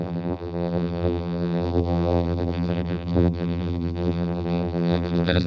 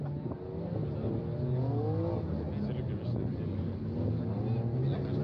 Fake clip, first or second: first